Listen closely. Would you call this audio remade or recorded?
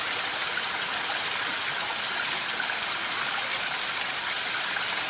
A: recorded